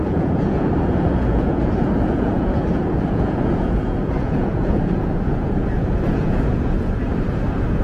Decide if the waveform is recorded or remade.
remade